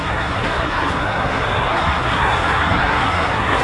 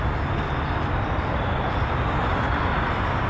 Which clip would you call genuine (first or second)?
second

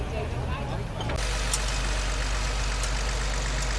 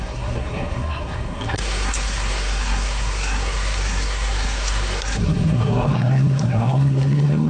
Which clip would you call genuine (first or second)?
first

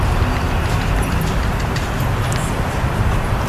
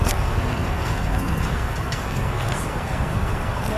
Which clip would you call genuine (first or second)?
first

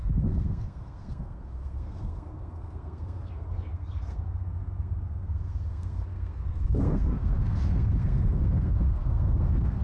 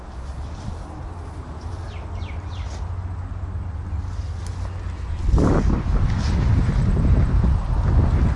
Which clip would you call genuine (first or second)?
second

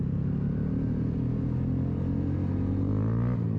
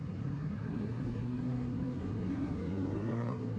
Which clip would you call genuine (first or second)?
first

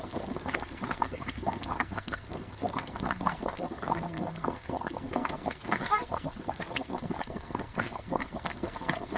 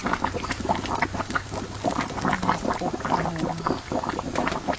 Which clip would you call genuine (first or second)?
second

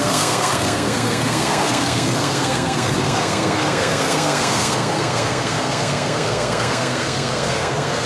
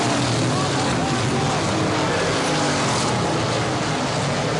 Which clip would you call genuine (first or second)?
second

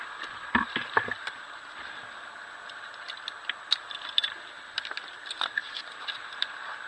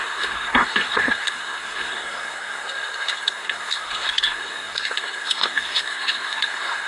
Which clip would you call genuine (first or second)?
first